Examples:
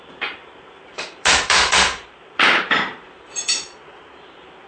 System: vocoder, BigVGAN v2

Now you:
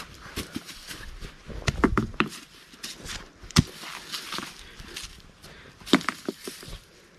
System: vocoder, BigVGAN v2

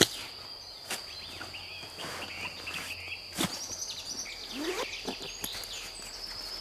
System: none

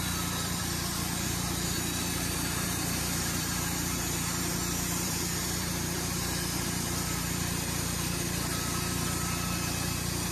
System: vocoder, BigVGAN v2